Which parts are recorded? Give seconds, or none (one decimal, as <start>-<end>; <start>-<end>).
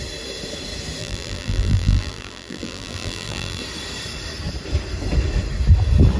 0.0-1.0; 3.6-6.2